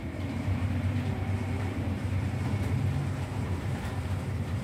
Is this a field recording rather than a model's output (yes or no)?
no